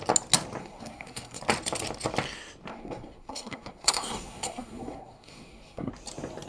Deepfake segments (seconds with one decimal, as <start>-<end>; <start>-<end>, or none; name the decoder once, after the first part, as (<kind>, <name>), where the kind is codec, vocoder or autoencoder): 0.6-1.4 (codec, SNAC); 2.7-5.9